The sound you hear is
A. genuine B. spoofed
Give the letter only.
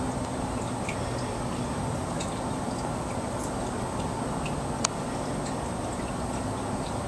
A